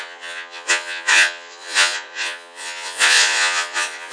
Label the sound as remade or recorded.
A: remade